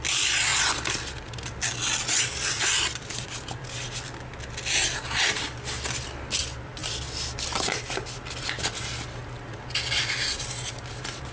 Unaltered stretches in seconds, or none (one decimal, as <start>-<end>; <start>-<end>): 0.0-11.3